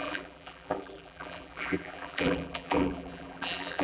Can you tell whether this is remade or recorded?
remade